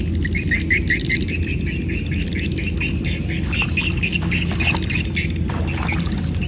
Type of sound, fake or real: real